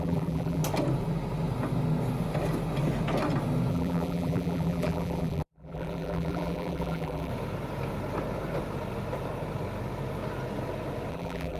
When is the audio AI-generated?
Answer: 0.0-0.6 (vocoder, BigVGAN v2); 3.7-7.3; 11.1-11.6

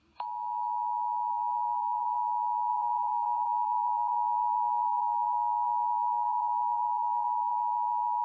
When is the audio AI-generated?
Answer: 1.3-2.2 (vocoder, BigVGAN v2); 2.7-7.5

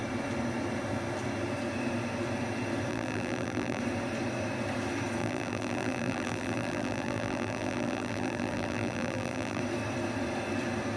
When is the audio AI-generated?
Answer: 2.9-3.8 (vocoder, BigVGAN v2); 5.2-9.6

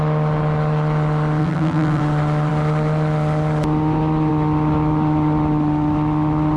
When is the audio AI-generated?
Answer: 1.4-2.0 (vocoder, BigVGAN v2)

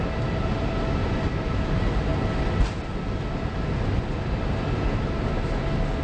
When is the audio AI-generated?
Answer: none

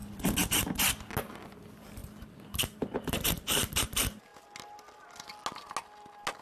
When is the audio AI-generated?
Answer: 1.2-4.3 (vocoder, BigVGAN v2)

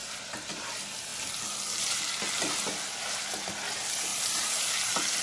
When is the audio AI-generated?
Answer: 0.0-0.5 (vocoder, BigVGAN v2); 4.1-4.7